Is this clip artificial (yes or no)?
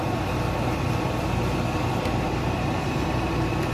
yes